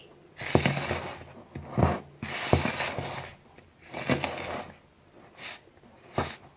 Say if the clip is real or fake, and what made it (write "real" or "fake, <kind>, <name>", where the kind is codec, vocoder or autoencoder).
real